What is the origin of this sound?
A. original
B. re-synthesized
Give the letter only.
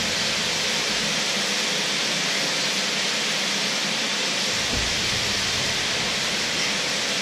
A